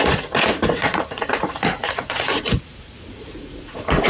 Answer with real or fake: fake